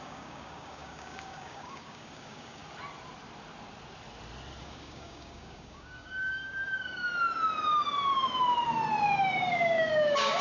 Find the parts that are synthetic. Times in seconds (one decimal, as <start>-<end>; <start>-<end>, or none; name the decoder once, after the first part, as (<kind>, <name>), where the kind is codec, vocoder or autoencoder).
0.0-2.6 (codec, DAC); 4.6-7.0; 9.5-10.4